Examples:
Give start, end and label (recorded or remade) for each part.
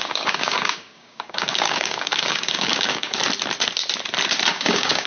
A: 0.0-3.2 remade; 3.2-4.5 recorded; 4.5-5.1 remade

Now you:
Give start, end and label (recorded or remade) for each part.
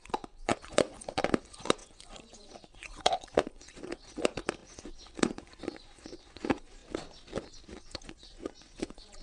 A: 0.0-6.8 remade; 6.8-7.6 recorded; 7.6-9.2 remade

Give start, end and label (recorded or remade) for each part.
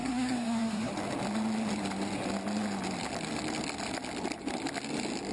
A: 0.0-0.9 remade; 0.9-5.3 recorded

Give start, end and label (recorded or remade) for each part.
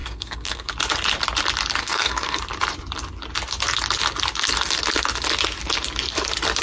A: 0.0-0.7 remade; 0.7-1.8 recorded; 1.8-2.4 remade; 2.4-6.6 recorded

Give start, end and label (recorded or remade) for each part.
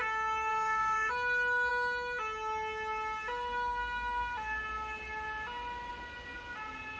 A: 0.0-0.5 recorded; 0.5-1.1 remade; 1.1-7.0 recorded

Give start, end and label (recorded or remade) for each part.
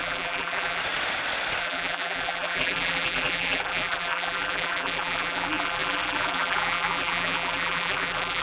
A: 0.0-0.8 remade; 0.8-1.6 recorded; 1.6-8.4 remade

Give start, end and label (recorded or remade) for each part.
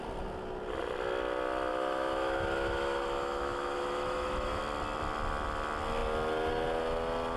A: 0.0-1.7 recorded; 1.7-4.6 remade; 4.6-7.4 recorded